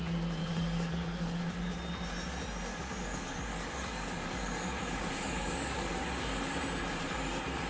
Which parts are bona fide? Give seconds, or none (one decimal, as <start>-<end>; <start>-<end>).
0.0-0.4; 1.7-2.7; 6.6-7.7